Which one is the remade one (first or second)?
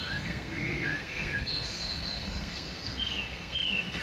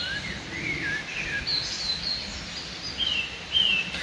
first